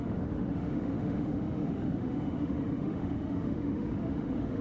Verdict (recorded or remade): remade